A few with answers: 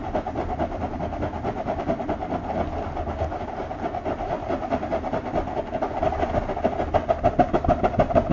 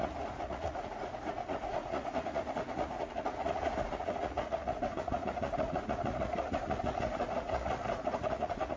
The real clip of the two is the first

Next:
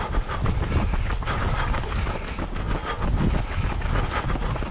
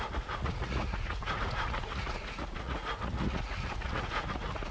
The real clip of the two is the first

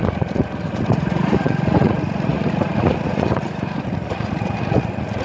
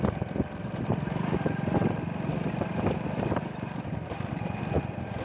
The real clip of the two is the second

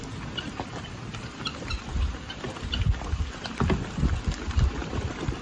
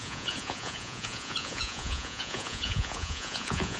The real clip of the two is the first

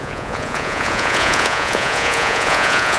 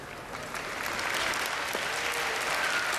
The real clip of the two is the second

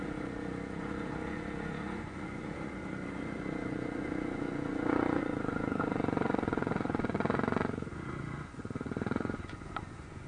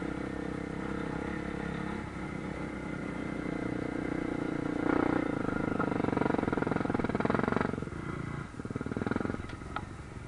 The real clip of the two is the second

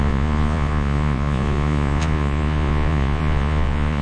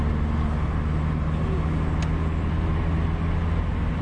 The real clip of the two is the second